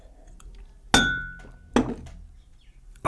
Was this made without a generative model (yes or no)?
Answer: yes